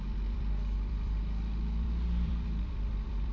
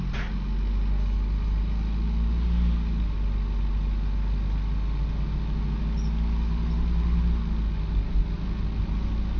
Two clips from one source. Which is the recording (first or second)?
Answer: second